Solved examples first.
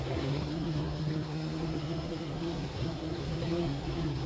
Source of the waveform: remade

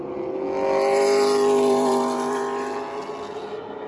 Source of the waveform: recorded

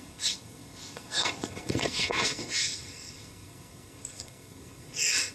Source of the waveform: remade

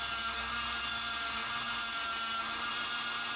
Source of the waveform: recorded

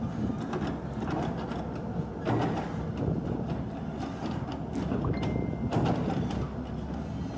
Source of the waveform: recorded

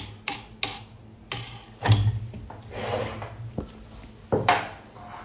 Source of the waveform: recorded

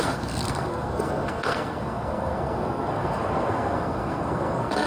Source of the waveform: remade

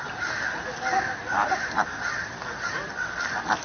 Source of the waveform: recorded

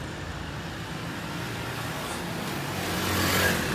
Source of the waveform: recorded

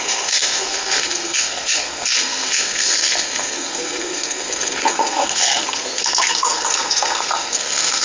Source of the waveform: remade